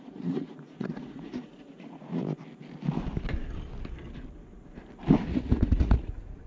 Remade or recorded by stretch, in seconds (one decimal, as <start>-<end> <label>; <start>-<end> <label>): 0.0-2.1 remade; 2.1-5.3 recorded; 5.3-6.5 remade